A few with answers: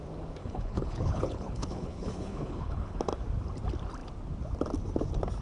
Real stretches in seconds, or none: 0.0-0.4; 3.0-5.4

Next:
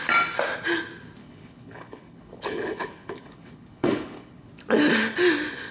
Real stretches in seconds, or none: 0.0-1.2; 4.5-5.7